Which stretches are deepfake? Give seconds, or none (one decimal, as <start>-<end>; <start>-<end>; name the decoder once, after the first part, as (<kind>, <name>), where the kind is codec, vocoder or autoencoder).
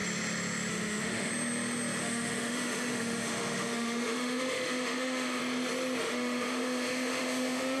0.7-1.3 (autoencoder, DAC-VAE); 2.0-5.4; 6.0-7.8